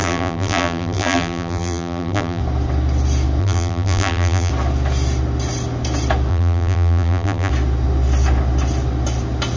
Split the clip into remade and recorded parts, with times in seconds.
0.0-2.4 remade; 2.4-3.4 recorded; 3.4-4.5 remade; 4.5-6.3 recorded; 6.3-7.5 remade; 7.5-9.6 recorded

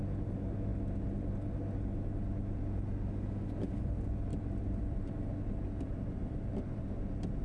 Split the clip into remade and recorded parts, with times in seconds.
0.0-4.3 recorded; 4.3-6.8 remade; 6.8-7.4 recorded

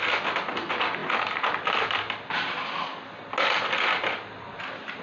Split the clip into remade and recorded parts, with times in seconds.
0.0-5.0 recorded

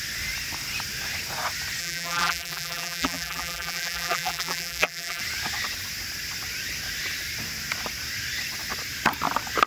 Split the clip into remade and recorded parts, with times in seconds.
0.0-1.8 recorded; 1.8-5.2 remade; 5.2-9.7 recorded

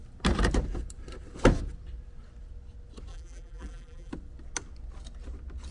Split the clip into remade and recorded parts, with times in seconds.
0.0-3.1 recorded; 3.1-4.1 remade; 4.1-5.7 recorded

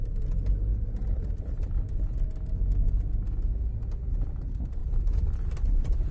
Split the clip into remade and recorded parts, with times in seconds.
0.0-0.7 recorded; 0.7-1.6 remade; 1.6-4.8 recorded; 4.8-5.5 remade; 5.5-6.1 recorded

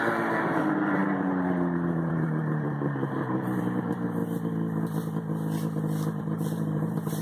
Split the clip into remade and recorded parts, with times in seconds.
0.0-4.2 remade; 4.2-6.2 recorded; 6.2-7.2 remade